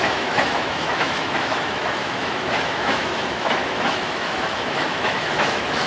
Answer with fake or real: fake